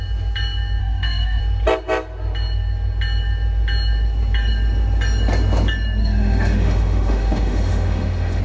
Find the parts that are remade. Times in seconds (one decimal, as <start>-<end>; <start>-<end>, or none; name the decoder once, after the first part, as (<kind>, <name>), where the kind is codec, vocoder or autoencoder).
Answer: 0.8-1.4 (autoencoder, DAC-VAE); 6.0-8.4